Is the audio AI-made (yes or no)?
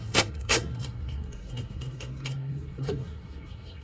yes